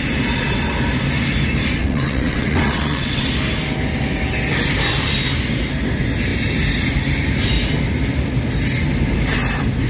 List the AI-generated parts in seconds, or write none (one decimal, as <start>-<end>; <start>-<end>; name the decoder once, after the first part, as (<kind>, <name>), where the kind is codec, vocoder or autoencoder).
1.8-3.2 (vocoder, WaveNeXt)